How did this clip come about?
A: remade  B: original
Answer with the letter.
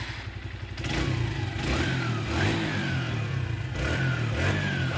B